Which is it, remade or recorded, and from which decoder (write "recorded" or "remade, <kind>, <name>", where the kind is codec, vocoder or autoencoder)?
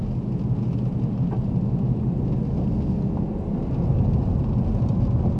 recorded